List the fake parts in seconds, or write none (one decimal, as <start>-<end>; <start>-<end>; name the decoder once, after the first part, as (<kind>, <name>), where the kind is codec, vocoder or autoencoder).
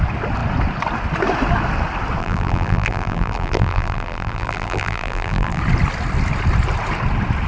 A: 2.2-5.6 (vocoder, BigVGAN v2)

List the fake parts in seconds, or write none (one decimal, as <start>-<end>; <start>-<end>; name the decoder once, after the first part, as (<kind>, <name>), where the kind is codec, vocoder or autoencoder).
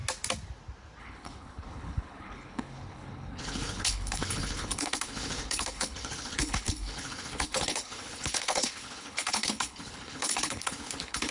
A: 1.0-11.3 (codec, HILCodec)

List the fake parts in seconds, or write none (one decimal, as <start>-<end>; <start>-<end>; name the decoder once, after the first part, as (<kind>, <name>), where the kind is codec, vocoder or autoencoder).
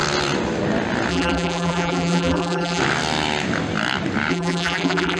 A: 1.1-2.8 (vocoder, BigVGAN v2); 4.3-5.2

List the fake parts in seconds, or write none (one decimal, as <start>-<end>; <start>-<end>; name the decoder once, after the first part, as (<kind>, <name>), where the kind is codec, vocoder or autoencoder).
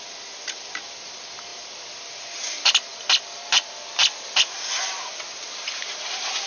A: none